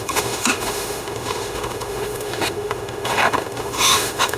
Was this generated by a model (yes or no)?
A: yes